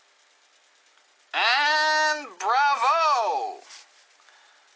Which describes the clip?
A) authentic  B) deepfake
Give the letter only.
A